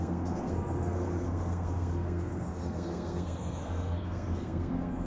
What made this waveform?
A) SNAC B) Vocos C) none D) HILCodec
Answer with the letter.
A